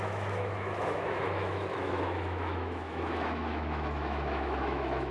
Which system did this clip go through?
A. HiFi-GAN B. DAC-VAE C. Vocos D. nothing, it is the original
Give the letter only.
B